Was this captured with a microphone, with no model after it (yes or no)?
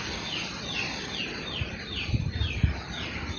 yes